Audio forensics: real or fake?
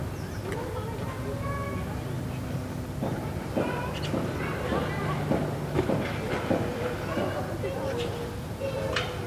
real